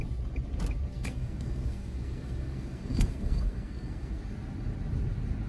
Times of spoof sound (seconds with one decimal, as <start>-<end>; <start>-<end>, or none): 0.9-4.2